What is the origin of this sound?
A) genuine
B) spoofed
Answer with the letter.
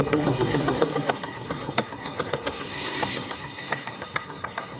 B